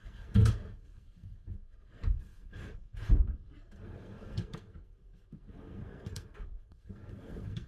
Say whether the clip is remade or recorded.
remade